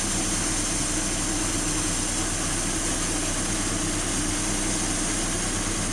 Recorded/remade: recorded